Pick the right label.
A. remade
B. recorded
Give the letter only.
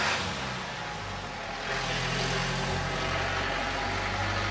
B